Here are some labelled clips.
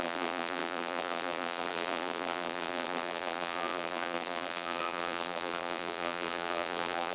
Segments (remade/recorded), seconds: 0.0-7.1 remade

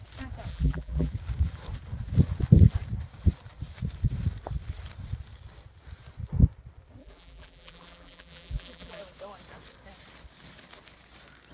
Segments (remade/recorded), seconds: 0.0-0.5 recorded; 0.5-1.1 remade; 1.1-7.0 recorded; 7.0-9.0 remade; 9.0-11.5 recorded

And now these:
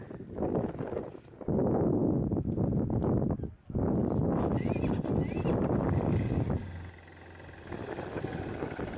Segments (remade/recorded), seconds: 0.0-9.0 recorded

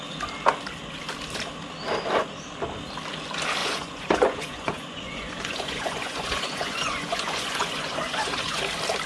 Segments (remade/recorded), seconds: 0.0-3.6 recorded; 3.6-8.6 remade; 8.6-9.1 recorded

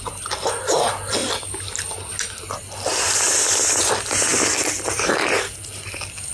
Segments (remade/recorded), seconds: 0.0-6.3 recorded

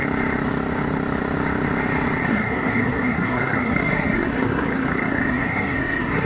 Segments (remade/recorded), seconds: 0.0-2.2 recorded; 2.2-6.3 remade

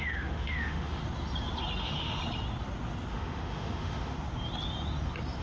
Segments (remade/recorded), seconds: 0.0-1.0 remade; 1.0-1.8 recorded; 1.8-2.2 remade; 2.2-3.1 recorded; 3.1-4.1 remade; 4.1-5.4 recorded